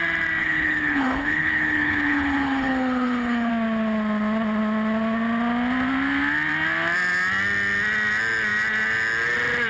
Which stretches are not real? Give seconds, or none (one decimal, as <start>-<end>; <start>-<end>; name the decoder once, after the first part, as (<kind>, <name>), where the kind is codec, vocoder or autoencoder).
0.4-3.5 (codec, HILCodec)